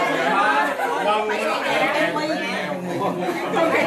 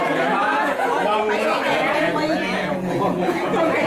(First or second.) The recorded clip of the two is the first